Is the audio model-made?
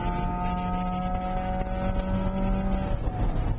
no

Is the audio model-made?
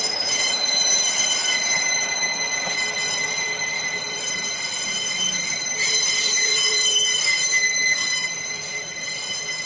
yes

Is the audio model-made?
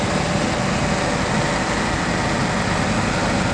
no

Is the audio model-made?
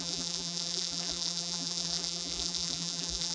yes